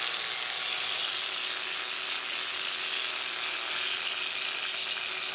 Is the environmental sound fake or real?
real